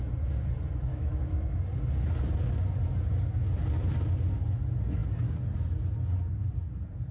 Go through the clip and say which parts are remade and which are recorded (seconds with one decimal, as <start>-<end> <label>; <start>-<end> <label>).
0.0-0.9 recorded; 0.9-1.6 remade; 1.6-7.1 recorded